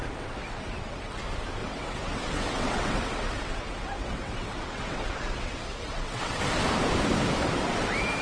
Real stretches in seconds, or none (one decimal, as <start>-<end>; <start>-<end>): 1.1-1.6; 6.4-8.2